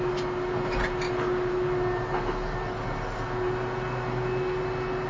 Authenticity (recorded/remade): recorded